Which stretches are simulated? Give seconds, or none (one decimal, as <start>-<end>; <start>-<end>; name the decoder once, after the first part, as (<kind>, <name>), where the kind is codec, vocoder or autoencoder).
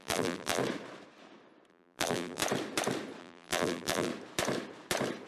0.0-0.6 (vocoder, BigVGAN v2); 1.7-2.4; 3.2-4.1